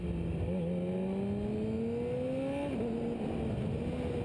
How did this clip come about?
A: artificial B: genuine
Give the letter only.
B